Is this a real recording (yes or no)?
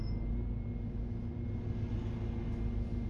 yes